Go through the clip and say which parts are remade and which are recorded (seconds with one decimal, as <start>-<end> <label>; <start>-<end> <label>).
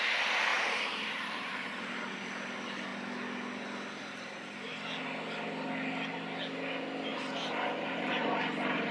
0.0-0.5 recorded; 0.5-1.6 remade; 1.6-7.1 recorded; 7.1-8.3 remade; 8.3-8.9 recorded